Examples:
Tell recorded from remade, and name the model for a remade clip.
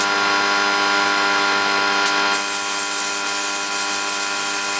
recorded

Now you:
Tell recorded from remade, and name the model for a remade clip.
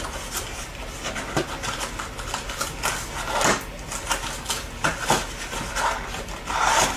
recorded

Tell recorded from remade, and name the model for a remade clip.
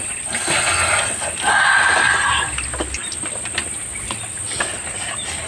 recorded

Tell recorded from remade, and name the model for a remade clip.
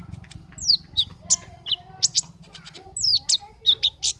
recorded